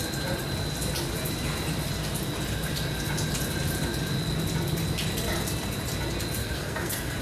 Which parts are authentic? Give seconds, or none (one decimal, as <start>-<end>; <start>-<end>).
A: 0.0-6.4